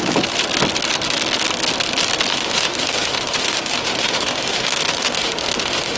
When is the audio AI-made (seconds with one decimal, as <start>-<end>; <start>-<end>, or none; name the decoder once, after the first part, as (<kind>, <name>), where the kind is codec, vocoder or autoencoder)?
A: 2.3-6.0 (autoencoder, DAC-VAE)